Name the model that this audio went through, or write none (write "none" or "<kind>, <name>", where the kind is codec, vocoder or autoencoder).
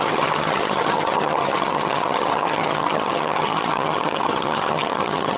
vocoder, HiFi-GAN